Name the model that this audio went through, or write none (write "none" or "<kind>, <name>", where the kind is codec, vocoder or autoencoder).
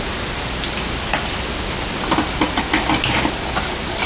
none